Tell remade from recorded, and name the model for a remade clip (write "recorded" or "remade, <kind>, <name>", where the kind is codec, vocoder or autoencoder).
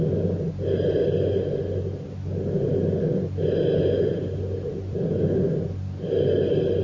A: recorded